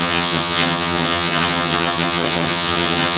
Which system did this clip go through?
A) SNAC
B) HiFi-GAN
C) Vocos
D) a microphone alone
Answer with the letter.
B